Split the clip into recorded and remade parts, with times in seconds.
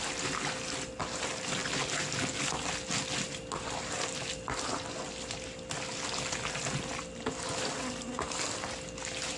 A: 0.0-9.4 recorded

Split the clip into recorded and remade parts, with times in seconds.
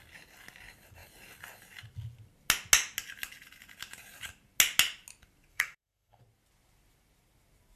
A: 0.0-5.5 recorded; 5.5-6.2 remade; 6.2-7.8 recorded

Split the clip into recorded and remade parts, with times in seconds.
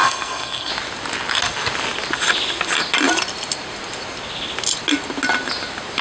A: 0.0-0.7 remade; 0.7-6.0 recorded